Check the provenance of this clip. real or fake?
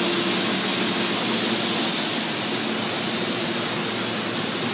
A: real